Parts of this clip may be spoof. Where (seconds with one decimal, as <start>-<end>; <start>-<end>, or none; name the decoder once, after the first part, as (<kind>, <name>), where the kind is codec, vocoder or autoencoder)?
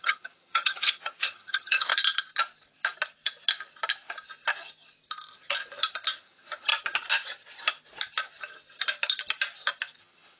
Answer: 0.0-1.9 (vocoder, HiFi-GAN); 6.2-6.7; 10.0-10.4